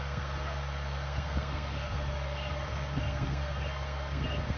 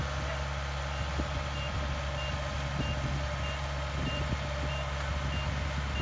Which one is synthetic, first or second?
first